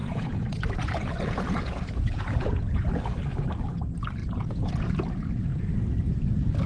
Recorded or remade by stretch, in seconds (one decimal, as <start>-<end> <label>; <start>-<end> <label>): 0.0-3.0 remade; 3.0-4.2 recorded; 4.2-4.7 remade; 4.7-6.7 recorded